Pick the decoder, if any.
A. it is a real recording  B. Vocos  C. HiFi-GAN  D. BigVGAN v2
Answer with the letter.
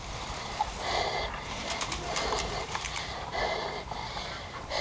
D